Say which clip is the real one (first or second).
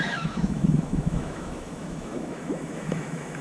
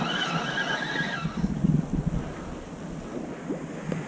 second